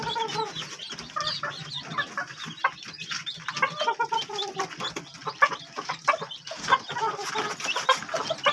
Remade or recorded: recorded